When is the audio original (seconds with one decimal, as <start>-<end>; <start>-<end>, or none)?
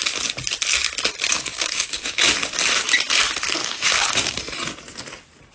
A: 0.0-1.3; 2.2-3.6; 4.4-5.5